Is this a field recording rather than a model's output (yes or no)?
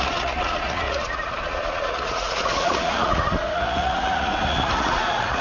no